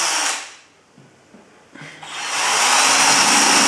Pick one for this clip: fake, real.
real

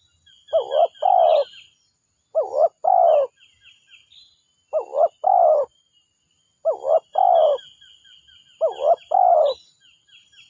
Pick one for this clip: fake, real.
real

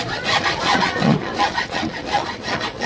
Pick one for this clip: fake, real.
fake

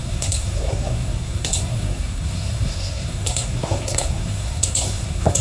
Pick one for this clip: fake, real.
fake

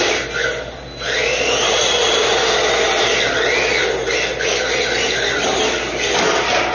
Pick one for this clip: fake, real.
real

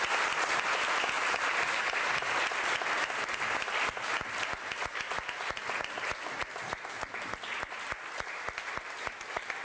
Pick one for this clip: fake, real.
real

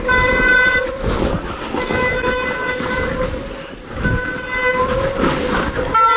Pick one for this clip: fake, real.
real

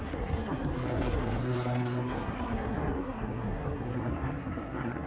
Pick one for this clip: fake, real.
fake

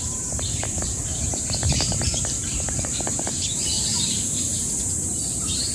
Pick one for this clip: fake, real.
fake